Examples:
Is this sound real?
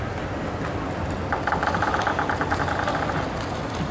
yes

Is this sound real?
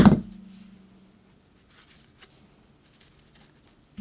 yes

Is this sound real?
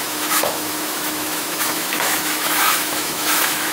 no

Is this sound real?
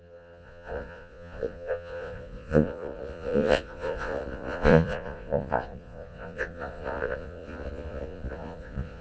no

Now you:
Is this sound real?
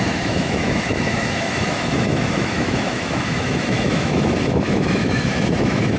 no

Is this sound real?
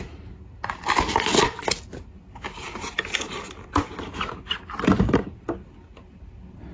yes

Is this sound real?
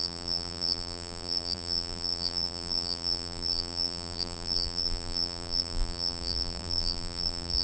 no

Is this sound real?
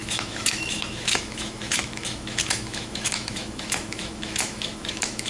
no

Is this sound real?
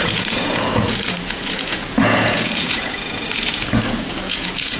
no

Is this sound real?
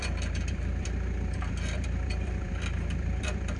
no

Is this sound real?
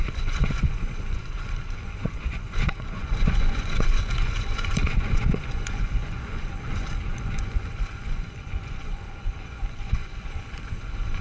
no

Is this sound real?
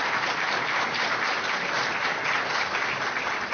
yes